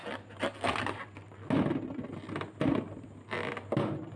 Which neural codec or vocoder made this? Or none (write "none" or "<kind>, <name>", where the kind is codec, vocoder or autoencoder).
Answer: none